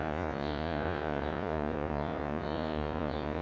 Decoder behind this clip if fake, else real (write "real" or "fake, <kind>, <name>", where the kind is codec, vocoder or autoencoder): fake, vocoder, Vocos